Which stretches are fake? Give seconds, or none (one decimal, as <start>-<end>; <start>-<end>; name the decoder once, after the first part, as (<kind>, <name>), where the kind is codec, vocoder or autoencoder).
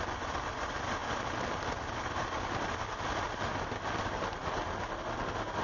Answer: none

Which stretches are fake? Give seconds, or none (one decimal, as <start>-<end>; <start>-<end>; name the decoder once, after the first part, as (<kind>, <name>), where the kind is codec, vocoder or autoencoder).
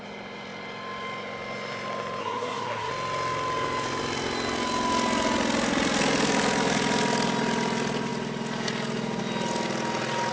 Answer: 2.2-2.9 (codec, SNAC)